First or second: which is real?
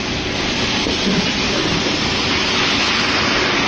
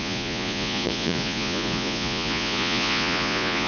first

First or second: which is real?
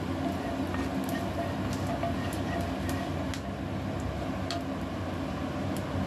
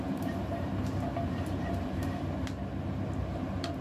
first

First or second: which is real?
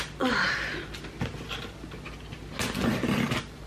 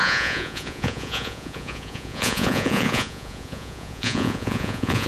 first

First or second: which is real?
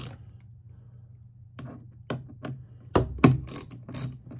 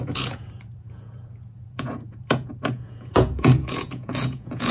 first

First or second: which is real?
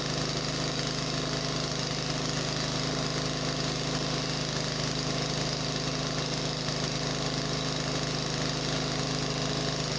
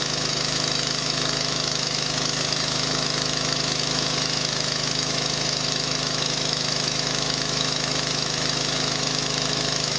first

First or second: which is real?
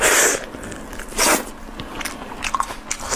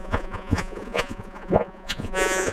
first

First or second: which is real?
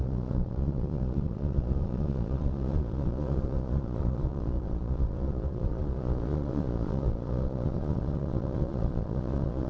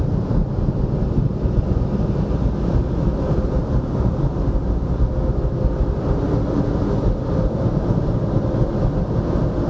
second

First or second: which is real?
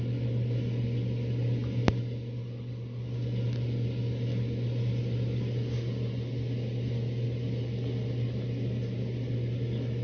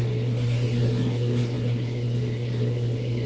first